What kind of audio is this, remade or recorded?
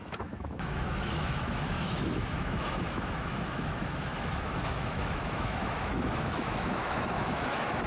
remade